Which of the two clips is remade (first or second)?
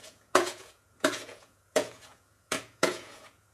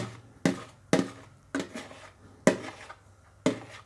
first